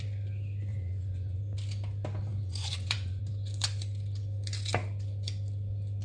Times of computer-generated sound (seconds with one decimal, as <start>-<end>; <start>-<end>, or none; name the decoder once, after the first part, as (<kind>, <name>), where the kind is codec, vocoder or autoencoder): 0.7-1.4 (vocoder, Vocos); 2.3-3.2